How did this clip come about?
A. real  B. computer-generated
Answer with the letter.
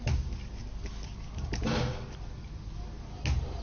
A